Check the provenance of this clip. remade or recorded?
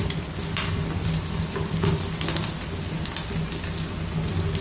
recorded